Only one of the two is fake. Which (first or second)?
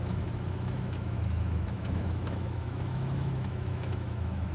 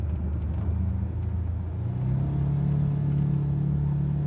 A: first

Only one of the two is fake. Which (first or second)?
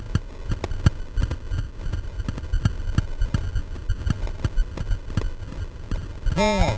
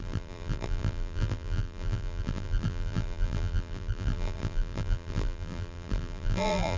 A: second